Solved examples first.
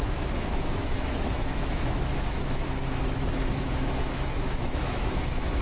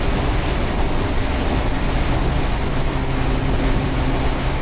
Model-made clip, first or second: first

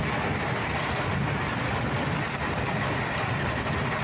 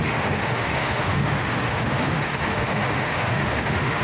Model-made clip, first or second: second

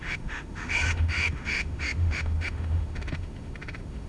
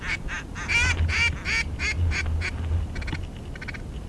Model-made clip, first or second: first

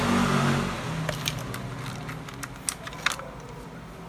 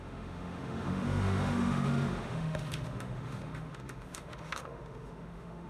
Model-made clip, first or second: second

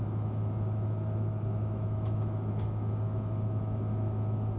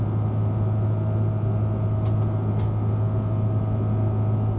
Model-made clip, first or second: first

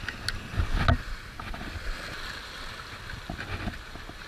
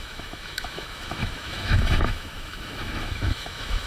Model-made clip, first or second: second